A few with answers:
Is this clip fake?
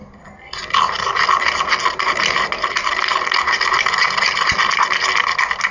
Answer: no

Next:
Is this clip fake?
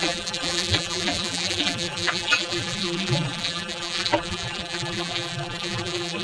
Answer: yes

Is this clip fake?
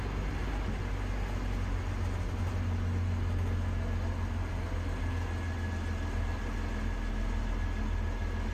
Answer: no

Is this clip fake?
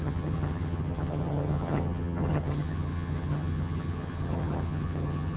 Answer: yes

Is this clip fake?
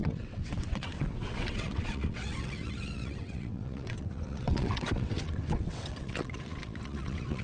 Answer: yes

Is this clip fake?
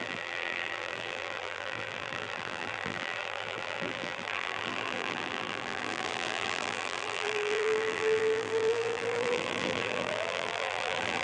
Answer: yes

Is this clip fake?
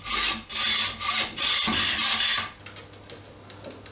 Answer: no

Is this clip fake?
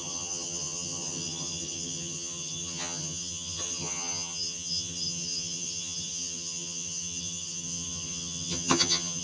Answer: yes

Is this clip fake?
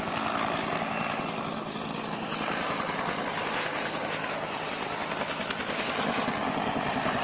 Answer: no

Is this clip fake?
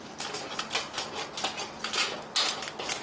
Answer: no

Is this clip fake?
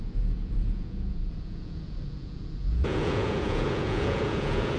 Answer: yes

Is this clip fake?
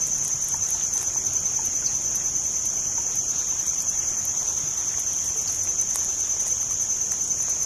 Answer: no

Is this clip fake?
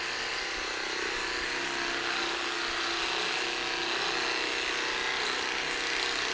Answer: no